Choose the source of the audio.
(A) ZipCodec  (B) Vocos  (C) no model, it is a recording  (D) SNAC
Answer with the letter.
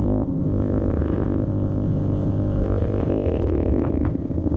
A